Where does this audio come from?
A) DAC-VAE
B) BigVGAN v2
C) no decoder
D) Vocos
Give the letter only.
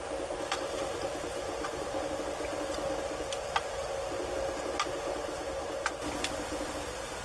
C